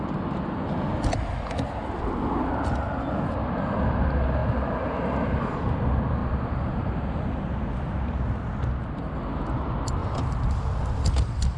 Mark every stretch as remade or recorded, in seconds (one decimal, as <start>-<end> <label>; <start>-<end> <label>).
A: 0.0-11.6 recorded